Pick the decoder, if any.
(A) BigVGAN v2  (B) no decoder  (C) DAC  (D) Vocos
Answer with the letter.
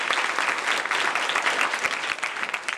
B